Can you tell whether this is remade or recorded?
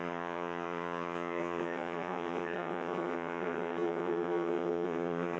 remade